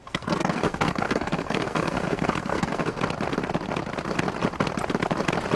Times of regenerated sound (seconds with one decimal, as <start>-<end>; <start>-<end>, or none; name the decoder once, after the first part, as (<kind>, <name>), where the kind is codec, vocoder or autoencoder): 0.0-3.0 (codec, SNAC)